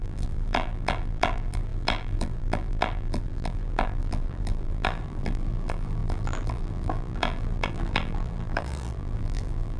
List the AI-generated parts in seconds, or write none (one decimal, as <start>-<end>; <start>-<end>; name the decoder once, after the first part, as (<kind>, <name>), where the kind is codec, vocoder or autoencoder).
0.0-9.8 (vocoder, BigVGAN v2)